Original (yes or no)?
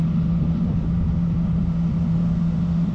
yes